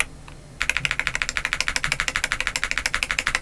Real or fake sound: real